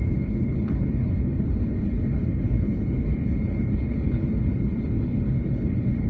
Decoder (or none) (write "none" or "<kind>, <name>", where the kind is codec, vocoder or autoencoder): codec, HILCodec